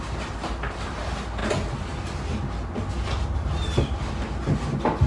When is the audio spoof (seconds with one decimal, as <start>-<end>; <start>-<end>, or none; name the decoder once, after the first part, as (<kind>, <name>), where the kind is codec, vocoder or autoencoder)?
none